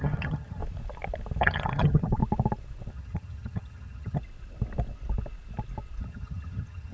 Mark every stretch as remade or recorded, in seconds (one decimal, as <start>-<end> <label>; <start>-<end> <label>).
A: 0.0-0.6 remade; 0.6-1.4 recorded; 1.4-2.2 remade; 2.2-2.9 recorded; 2.9-4.2 remade; 4.2-6.0 recorded; 6.0-6.9 remade